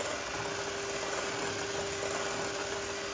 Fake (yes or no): no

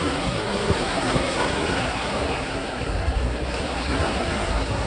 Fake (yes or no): yes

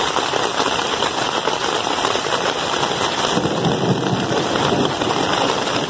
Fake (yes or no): no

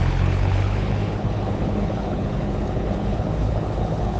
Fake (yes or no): yes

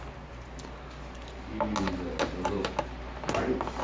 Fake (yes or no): no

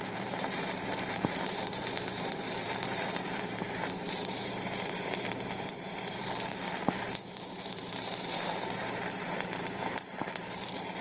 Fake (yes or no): yes